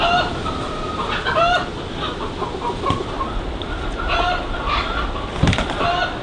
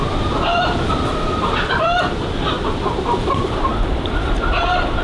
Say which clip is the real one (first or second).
first